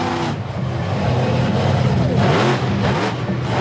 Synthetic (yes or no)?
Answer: no